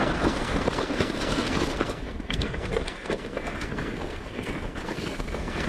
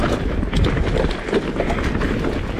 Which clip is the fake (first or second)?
first